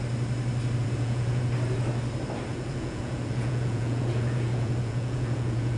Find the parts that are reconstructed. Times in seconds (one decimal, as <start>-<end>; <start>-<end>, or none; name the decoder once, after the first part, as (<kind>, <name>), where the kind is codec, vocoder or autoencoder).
0.8-1.4 (vocoder, Vocos); 2.5-5.8